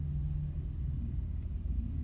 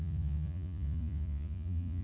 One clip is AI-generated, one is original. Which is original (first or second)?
first